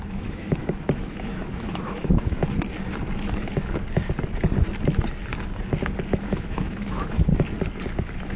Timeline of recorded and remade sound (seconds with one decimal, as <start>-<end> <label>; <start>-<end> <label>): 0.0-2.4 remade; 2.4-6.1 recorded; 6.1-7.3 remade; 7.3-8.0 recorded; 8.0-8.4 remade